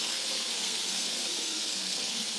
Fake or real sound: fake